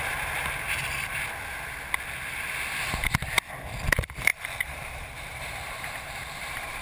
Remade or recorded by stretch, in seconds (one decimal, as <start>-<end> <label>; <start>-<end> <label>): 0.0-0.9 remade; 0.9-3.9 recorded; 3.9-6.8 remade